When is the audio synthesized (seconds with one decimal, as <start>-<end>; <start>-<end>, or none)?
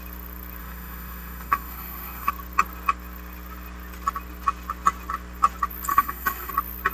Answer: 0.6-2.3; 5.9-6.5